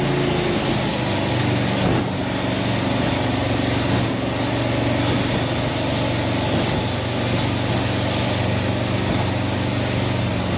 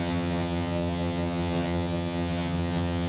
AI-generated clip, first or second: second